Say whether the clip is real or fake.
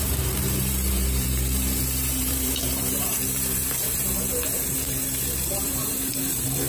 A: fake